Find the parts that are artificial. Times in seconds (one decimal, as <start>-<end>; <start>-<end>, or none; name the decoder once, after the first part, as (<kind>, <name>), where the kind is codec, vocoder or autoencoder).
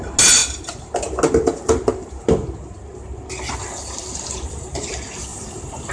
none